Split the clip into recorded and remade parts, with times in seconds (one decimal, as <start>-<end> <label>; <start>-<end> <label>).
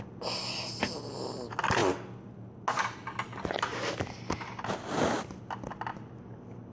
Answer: 0.0-6.7 recorded